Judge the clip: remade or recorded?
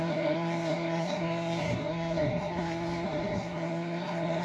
remade